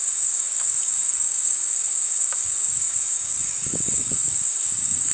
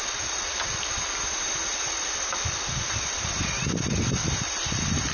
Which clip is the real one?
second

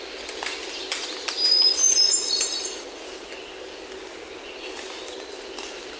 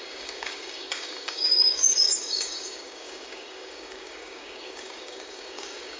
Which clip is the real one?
first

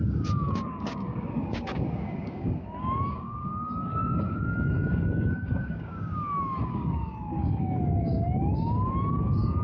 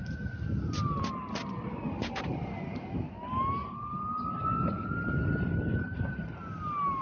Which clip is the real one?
second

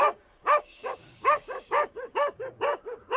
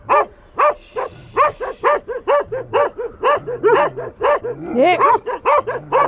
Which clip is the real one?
second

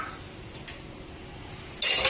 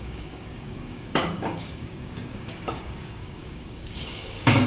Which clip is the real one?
first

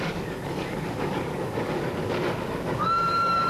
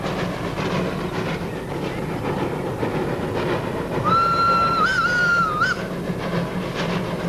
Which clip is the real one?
second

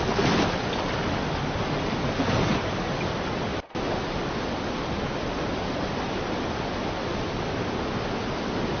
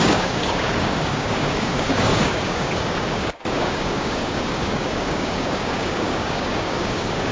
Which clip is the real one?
first